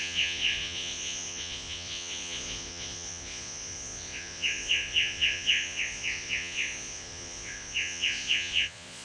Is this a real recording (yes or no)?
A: no